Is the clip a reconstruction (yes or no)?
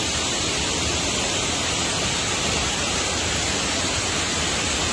no